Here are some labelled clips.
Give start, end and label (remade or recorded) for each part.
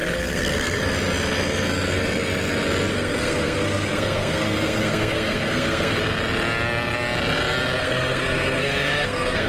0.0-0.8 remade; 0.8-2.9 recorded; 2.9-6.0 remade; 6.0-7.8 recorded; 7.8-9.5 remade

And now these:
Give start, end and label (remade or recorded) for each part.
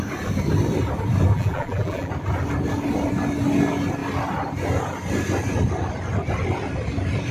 0.0-1.3 recorded; 1.3-2.1 remade; 2.1-7.3 recorded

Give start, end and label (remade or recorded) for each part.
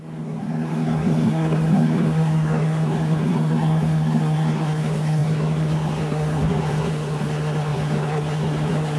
0.0-9.0 remade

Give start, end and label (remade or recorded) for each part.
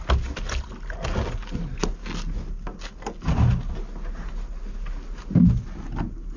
0.0-6.4 recorded